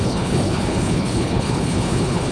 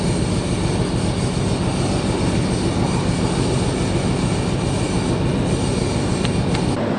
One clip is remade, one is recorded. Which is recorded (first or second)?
second